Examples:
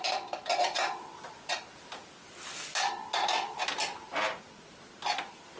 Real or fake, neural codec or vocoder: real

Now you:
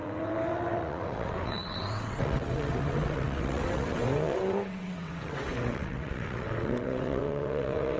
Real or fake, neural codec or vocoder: fake, vocoder, WaveNeXt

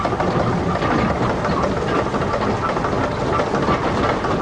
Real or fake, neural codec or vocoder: real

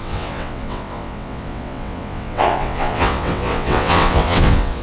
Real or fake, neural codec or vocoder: fake, vocoder, WaveNeXt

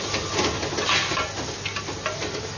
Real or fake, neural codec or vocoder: real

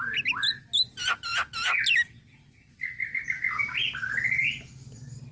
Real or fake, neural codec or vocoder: real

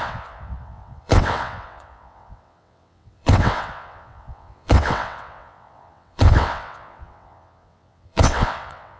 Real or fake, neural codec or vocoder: fake, vocoder, WaveNeXt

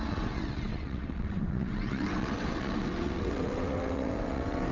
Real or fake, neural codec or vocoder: fake, vocoder, WaveNeXt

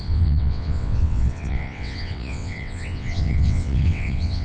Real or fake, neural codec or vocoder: fake, vocoder, WaveNeXt